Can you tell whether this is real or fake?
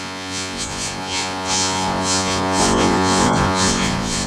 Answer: fake